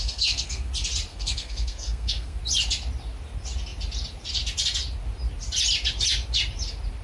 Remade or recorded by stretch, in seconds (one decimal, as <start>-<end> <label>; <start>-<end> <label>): 0.0-0.7 remade; 0.7-1.1 recorded; 1.1-2.4 remade; 2.4-7.0 recorded